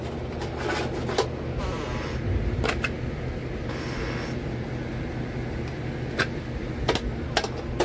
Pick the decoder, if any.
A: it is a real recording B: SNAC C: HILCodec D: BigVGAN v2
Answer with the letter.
A